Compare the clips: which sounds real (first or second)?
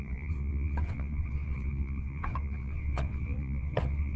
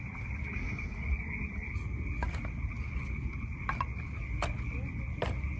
second